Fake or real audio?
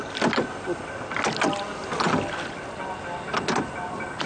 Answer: real